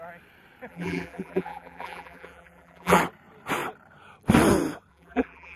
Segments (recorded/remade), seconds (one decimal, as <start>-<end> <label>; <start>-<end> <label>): 0.0-0.7 recorded; 0.7-3.0 remade; 3.0-4.9 recorded; 4.9-5.6 remade